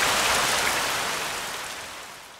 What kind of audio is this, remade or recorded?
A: recorded